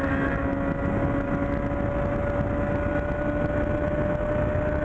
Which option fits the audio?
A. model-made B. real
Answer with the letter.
B